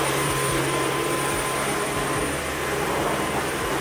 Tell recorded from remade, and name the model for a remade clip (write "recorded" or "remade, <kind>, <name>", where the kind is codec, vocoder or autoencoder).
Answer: recorded